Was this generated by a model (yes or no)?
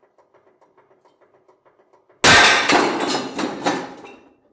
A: no